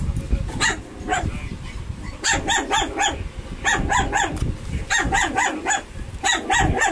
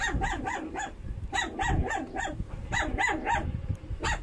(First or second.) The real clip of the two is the first